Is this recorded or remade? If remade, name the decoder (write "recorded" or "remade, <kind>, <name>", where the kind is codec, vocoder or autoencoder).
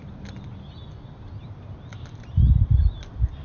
recorded